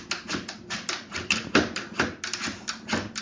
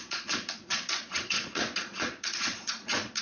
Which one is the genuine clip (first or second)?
first